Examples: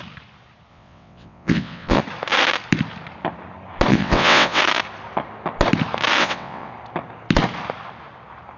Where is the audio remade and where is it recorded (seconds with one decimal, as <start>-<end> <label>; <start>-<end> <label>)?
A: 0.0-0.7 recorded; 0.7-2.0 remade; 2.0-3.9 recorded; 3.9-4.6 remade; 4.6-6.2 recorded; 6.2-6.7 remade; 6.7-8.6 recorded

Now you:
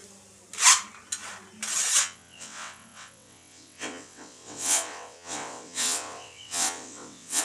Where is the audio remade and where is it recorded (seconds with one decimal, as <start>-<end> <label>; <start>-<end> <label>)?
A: 0.0-2.0 recorded; 2.0-7.4 remade

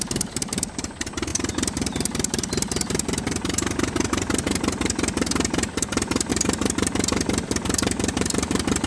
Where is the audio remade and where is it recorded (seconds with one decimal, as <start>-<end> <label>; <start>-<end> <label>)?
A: 0.0-8.9 recorded

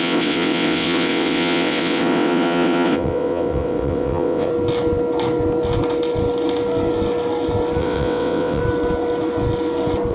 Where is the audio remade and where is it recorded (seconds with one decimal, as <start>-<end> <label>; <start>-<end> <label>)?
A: 0.0-4.5 remade; 4.5-7.8 recorded; 7.8-8.6 remade; 8.6-10.1 recorded

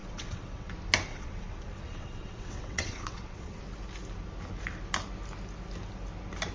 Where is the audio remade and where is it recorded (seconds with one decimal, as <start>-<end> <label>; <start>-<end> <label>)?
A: 0.0-0.7 remade; 0.7-1.1 recorded; 1.1-3.6 remade; 3.6-6.5 recorded

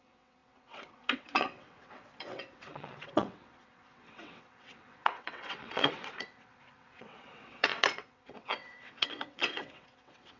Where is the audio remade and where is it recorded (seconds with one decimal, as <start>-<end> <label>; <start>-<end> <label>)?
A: 0.0-10.4 remade

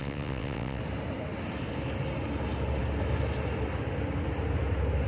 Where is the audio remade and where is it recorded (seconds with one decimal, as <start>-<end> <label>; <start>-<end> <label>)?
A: 0.0-0.8 remade; 0.8-5.1 recorded